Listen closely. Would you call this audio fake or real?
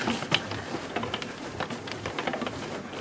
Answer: real